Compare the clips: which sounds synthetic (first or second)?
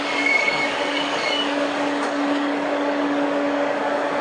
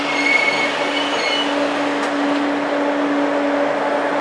first